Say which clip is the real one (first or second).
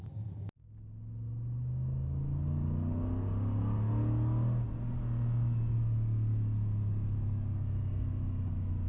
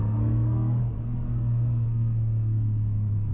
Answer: first